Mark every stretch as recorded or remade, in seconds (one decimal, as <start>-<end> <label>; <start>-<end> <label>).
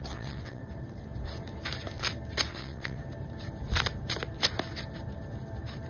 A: 0.0-0.6 remade; 0.6-2.5 recorded; 2.5-3.0 remade; 3.0-5.9 recorded